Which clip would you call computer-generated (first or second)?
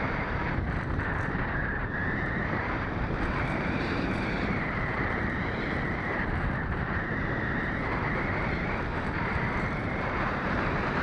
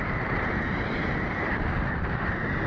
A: first